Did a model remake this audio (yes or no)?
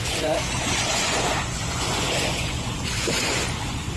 yes